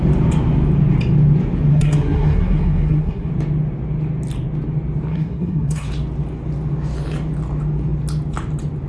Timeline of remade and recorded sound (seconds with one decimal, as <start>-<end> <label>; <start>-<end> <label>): 0.0-1.7 recorded; 1.7-3.3 remade; 3.3-5.1 recorded; 5.1-5.9 remade; 5.9-8.9 recorded